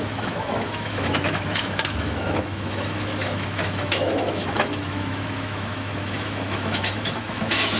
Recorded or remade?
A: remade